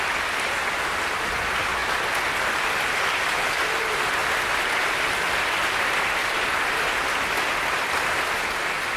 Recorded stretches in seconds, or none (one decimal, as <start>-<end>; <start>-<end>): 0.0-4.2; 8.6-9.0